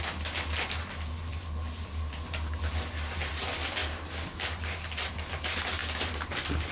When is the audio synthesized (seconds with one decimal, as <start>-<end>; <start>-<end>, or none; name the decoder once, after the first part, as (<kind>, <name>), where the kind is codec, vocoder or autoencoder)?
none